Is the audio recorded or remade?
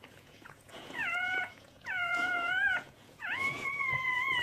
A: remade